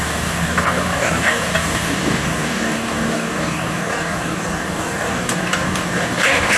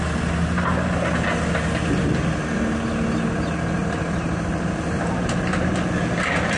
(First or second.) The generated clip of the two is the first